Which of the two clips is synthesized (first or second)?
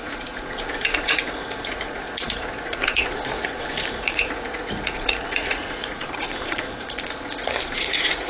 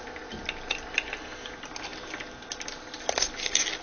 first